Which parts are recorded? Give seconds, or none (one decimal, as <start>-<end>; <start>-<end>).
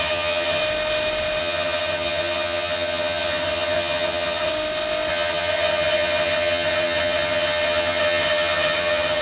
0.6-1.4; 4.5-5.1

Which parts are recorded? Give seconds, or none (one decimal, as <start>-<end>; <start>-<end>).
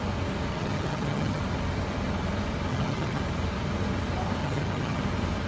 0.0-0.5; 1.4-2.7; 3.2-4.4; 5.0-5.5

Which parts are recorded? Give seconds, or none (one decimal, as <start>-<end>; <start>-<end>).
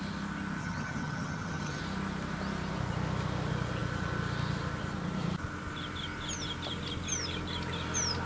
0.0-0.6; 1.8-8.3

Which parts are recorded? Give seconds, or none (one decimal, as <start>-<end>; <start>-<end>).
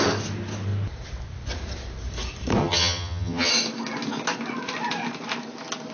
0.0-2.6; 3.5-5.9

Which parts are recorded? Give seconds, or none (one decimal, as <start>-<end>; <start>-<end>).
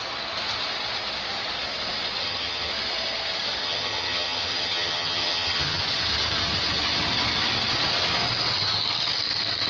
0.0-2.2; 2.7-3.6; 5.8-9.7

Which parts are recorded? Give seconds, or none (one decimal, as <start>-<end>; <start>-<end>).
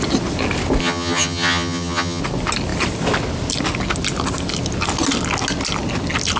0.0-0.8; 2.2-6.4